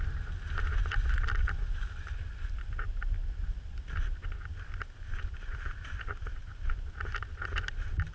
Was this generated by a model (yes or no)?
no